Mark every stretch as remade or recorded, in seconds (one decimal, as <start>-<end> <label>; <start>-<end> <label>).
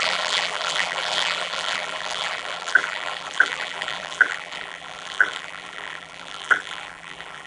0.0-7.5 remade